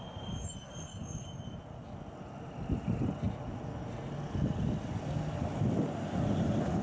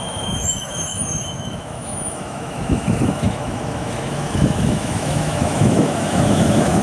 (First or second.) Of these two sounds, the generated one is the second